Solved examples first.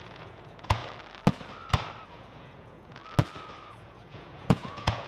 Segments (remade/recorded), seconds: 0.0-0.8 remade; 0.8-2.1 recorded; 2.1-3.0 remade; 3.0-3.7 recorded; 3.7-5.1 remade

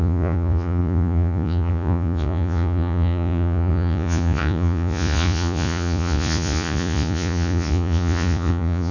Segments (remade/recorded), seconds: 0.0-8.9 remade

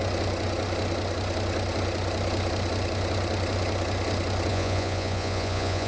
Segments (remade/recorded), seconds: 0.0-4.5 recorded; 4.5-5.9 remade

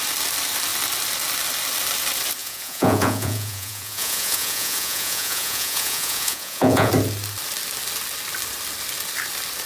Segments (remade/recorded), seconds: 0.0-2.4 recorded; 2.4-6.9 remade; 6.9-9.7 recorded